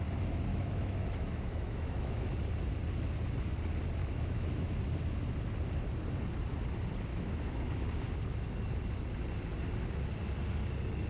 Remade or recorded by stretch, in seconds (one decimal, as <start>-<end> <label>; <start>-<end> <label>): 0.0-0.5 recorded; 0.5-2.3 remade; 2.3-4.0 recorded; 4.0-4.8 remade; 4.8-7.1 recorded; 7.1-7.8 remade; 7.8-11.1 recorded